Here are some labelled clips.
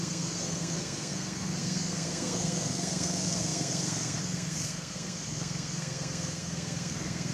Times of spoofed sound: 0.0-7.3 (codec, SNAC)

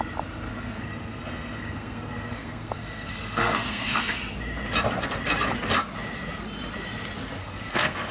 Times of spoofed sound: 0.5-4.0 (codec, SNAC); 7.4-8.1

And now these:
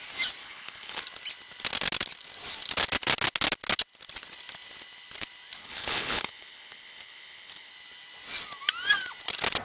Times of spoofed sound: 0.4-1.0 (codec, HILCodec); 5.6-7.7

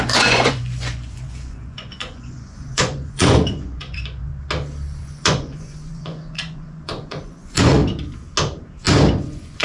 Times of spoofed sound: 0.0-4.3 (vocoder, Vocos); 5.0-7.8; 9.2-9.6

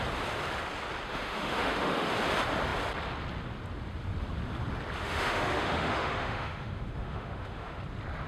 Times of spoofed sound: 1.1-2.1 (autoencoder, DAC-VAE); 5.0-7.8

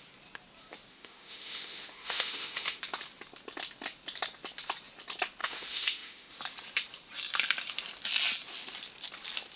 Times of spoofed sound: 0.9-2.8 (autoencoder, DAC-VAE); 5.4-6.3